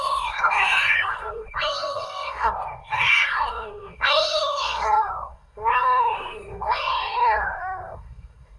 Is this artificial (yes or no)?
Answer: yes